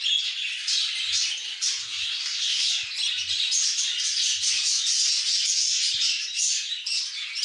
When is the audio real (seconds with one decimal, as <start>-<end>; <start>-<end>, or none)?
0.0-1.8; 2.7-7.4